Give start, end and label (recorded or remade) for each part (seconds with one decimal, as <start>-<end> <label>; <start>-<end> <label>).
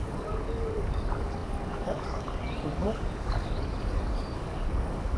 0.0-5.2 remade